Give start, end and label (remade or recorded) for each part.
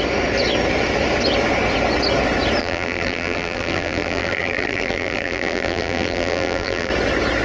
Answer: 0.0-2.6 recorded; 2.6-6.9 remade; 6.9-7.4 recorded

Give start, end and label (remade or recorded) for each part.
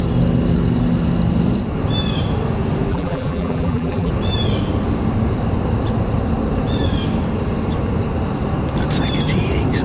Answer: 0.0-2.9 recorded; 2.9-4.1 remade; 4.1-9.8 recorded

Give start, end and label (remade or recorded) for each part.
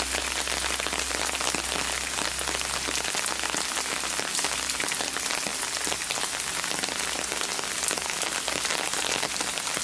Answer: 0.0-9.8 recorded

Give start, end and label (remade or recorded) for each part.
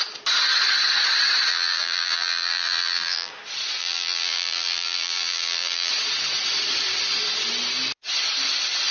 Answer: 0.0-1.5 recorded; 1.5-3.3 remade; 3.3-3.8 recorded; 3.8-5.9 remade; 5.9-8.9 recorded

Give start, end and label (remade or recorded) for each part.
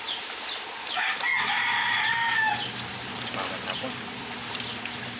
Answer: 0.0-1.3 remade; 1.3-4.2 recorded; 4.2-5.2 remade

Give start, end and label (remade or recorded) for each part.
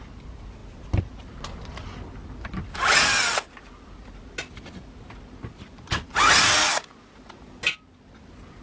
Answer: 0.0-8.6 recorded